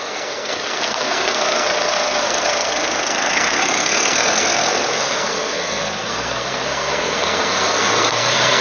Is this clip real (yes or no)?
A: no